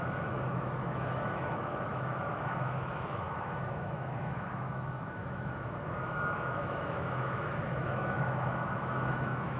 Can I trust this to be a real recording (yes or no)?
no